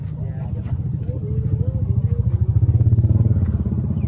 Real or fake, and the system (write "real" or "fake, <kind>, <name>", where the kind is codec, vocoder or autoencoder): real